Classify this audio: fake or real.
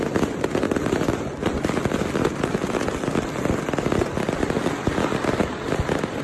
real